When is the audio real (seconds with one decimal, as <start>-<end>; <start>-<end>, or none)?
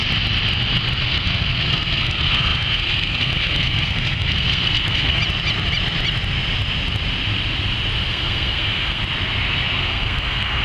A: 0.0-1.0; 5.2-8.0; 9.0-9.8